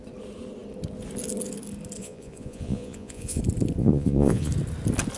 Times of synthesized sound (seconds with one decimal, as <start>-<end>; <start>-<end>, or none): 2.0-3.4; 3.8-4.5